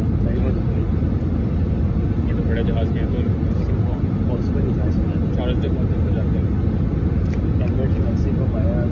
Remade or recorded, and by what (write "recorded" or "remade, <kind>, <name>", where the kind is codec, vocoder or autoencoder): recorded